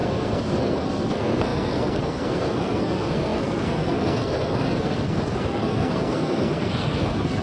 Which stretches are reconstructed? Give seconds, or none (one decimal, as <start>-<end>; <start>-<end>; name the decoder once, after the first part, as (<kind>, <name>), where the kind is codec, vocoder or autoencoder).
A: 0.0-7.4 (codec, SNAC)